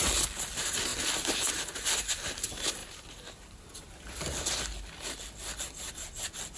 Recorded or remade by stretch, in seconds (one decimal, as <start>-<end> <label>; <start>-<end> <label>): 0.0-2.8 recorded; 2.8-3.7 remade; 3.7-6.6 recorded